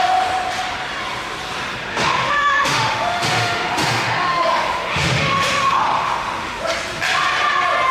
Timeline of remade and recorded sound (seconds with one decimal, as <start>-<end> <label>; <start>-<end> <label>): 0.0-1.9 recorded; 1.9-6.6 remade; 6.6-7.9 recorded